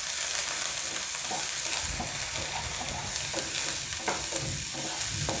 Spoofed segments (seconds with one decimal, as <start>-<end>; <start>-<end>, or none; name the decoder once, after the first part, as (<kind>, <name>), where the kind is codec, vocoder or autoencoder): none